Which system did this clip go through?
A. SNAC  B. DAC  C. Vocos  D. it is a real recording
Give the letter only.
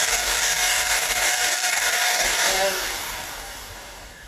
B